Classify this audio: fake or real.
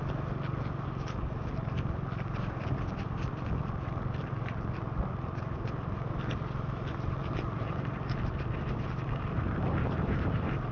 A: real